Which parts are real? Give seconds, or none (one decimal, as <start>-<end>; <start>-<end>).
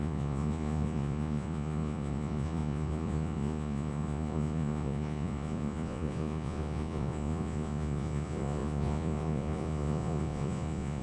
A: none